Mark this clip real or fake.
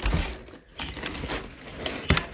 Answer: real